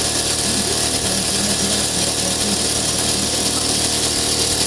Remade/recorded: recorded